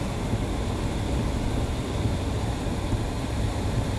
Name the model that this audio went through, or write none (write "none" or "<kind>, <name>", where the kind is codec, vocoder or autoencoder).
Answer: none